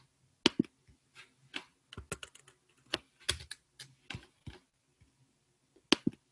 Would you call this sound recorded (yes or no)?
yes